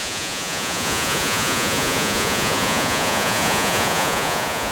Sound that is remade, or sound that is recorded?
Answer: remade